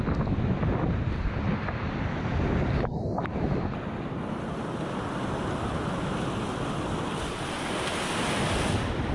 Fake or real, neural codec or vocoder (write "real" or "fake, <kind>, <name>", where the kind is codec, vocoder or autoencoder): real